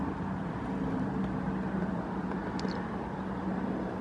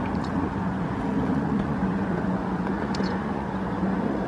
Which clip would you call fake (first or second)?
second